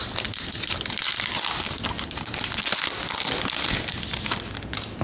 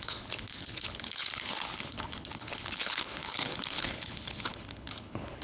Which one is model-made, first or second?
second